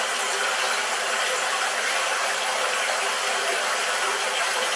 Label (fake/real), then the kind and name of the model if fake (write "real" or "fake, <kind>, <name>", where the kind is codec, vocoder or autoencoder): real